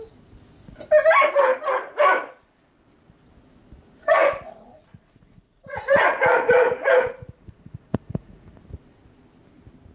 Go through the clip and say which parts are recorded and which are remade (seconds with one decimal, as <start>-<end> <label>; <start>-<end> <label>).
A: 0.0-4.0 recorded; 4.0-8.6 remade; 8.6-9.9 recorded